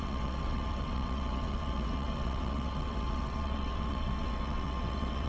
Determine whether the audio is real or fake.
fake